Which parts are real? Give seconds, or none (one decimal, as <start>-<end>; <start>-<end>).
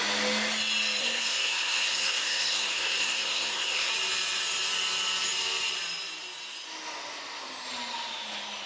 0.0-1.0; 3.9-8.7